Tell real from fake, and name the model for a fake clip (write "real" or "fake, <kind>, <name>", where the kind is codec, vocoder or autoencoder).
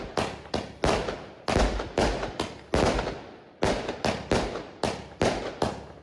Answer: real